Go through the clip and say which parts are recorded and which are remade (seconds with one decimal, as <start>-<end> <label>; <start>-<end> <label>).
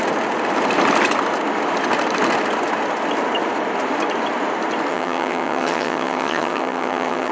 0.0-4.9 recorded; 4.9-7.3 remade